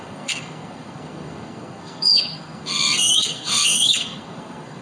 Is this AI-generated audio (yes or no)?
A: yes